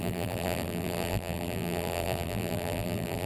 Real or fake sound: fake